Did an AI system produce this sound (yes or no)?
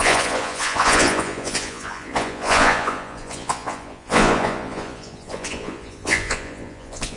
yes